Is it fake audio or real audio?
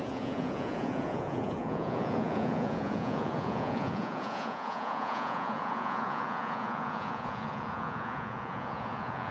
fake